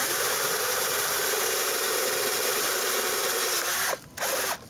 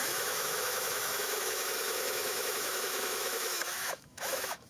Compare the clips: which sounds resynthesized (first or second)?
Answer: second